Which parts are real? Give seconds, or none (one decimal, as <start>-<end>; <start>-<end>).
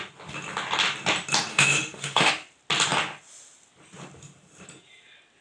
0.0-1.5; 2.3-5.4